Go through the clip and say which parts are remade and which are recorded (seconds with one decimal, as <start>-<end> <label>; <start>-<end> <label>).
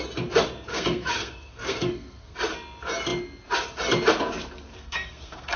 0.0-0.7 recorded; 0.7-2.4 remade; 2.4-4.7 recorded; 4.7-5.6 remade